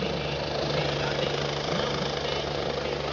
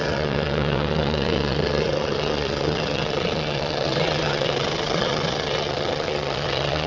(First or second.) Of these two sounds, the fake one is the second